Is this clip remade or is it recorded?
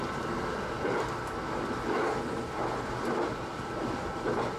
recorded